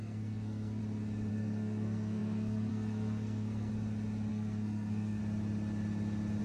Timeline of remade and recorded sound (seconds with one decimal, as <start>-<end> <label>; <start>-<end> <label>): 0.0-0.8 remade; 0.8-1.3 recorded; 1.3-3.7 remade; 3.7-4.3 recorded; 4.3-5.2 remade; 5.2-6.4 recorded